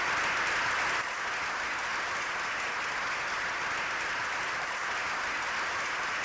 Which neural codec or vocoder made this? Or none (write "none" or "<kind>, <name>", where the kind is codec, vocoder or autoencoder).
none